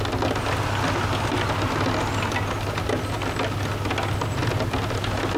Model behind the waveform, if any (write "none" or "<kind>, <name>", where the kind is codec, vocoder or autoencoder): none